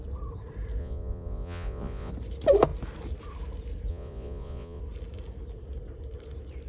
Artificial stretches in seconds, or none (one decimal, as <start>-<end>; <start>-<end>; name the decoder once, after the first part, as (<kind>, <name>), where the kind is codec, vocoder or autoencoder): 0.8-2.1 (vocoder, Vocos); 3.9-4.8